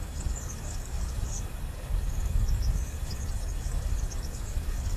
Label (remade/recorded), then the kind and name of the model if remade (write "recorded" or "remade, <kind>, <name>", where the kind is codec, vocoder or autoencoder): remade, codec, DAC